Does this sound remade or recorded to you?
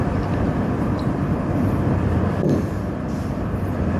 remade